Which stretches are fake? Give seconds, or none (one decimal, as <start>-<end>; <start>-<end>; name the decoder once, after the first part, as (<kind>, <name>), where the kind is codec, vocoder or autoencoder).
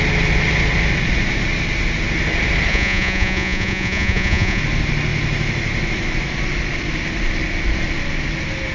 2.7-4.6 (vocoder, Vocos)